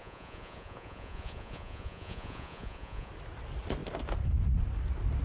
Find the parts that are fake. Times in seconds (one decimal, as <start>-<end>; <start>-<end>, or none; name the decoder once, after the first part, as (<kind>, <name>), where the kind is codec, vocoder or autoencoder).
0.0-3.1 (vocoder, Vocos)